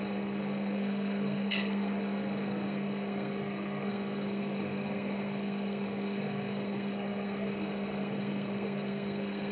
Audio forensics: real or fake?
fake